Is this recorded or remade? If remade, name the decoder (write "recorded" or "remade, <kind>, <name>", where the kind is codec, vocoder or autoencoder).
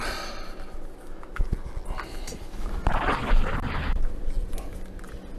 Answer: recorded